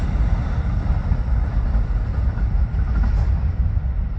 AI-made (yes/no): no